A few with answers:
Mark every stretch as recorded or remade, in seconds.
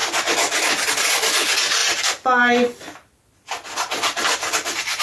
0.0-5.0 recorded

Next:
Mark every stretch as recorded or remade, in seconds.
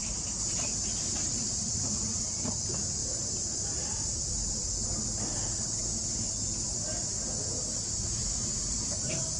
0.0-2.2 remade; 2.2-3.0 recorded; 3.0-3.5 remade; 3.5-3.9 recorded; 3.9-4.9 remade; 4.9-8.2 recorded; 8.2-9.4 remade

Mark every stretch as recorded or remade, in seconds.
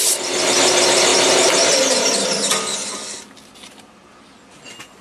0.0-5.0 recorded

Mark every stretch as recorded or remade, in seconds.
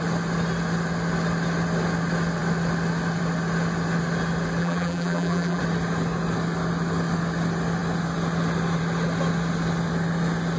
0.0-4.6 recorded; 4.6-5.6 remade; 5.6-10.6 recorded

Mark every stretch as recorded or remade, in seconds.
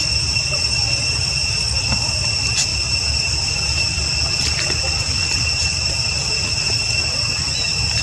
0.0-1.4 recorded; 1.4-1.9 remade; 1.9-2.7 recorded; 2.7-6.9 remade; 6.9-8.0 recorded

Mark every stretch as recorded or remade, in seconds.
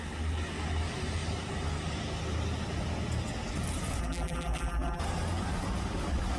0.0-4.0 recorded; 4.0-5.0 remade; 5.0-6.4 recorded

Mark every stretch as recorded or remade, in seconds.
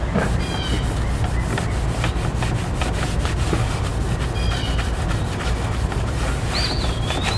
0.0-7.4 recorded